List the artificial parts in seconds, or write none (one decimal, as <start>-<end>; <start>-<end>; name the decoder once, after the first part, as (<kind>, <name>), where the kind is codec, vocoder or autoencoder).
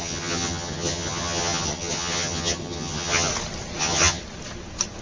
0.0-3.3 (vocoder, HiFi-GAN); 3.8-4.2